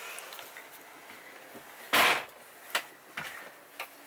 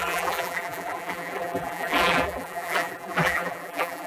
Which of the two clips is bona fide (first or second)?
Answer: first